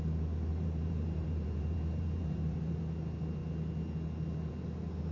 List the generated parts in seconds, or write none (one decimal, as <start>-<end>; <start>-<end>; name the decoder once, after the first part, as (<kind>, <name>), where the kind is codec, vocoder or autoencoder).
0.5-2.8 (vocoder, BigVGAN v2)